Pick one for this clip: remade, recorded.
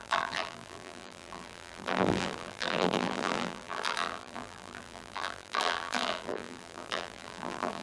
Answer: remade